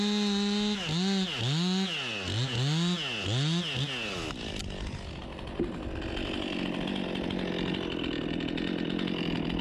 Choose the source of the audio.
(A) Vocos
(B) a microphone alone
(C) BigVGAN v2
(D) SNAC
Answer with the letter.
B